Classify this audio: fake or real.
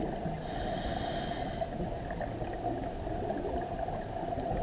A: real